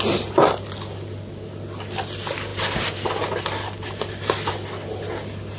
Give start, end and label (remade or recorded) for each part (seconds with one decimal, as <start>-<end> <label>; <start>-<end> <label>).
0.0-5.6 recorded